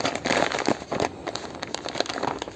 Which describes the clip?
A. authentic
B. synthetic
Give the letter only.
A